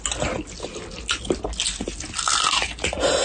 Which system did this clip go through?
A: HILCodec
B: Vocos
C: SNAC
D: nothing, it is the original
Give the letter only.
D